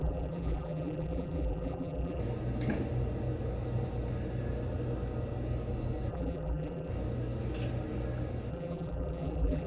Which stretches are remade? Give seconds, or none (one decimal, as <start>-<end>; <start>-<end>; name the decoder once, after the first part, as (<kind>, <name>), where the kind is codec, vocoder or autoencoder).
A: 0.0-2.2 (vocoder, BigVGAN v2); 6.1-6.9; 8.5-9.7